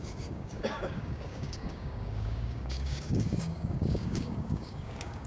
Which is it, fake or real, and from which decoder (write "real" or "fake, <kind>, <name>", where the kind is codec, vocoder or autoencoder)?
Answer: fake, codec, DAC